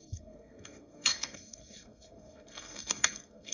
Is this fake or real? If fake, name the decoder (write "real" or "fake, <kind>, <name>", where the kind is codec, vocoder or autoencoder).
fake, codec, SNAC